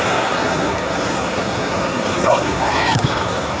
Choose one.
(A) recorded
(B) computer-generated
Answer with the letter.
B